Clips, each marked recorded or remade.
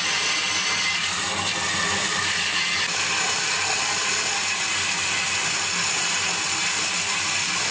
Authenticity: recorded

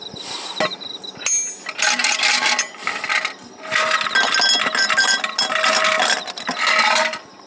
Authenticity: recorded